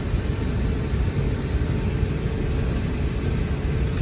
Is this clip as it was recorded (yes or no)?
yes